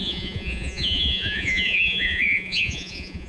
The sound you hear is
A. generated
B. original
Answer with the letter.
A